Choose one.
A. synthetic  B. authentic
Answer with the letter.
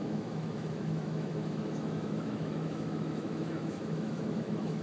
A